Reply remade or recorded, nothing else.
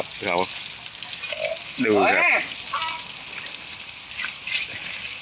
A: recorded